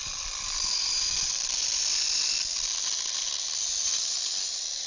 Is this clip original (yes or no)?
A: yes